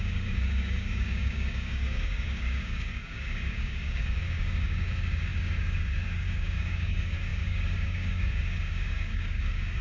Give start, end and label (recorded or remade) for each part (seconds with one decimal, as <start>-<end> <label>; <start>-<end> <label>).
0.0-9.8 remade